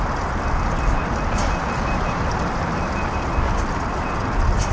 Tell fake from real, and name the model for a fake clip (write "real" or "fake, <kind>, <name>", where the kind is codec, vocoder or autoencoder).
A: real